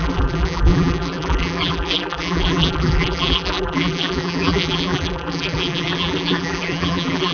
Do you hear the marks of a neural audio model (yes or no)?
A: yes